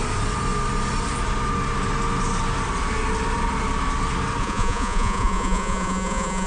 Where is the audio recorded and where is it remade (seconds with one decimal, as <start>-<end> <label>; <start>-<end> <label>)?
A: 0.0-4.4 recorded; 4.4-6.5 remade